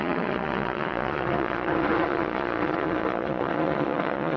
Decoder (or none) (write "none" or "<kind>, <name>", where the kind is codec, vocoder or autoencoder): vocoder, Vocos